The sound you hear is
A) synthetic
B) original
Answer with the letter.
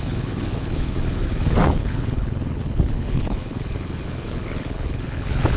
A